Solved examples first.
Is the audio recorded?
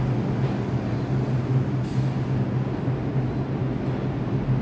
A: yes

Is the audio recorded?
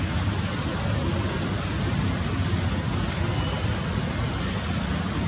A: yes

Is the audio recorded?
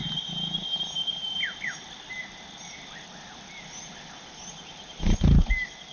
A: yes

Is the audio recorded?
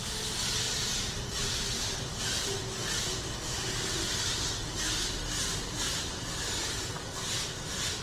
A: yes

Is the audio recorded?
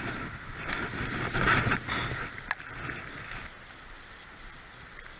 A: yes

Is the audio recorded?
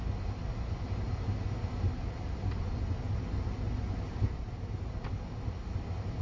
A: yes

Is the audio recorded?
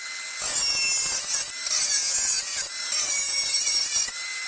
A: yes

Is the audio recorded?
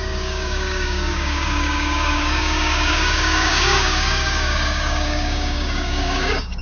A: no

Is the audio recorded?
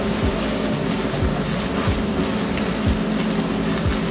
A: yes